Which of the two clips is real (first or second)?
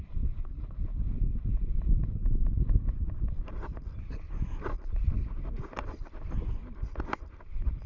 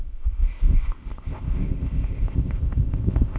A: first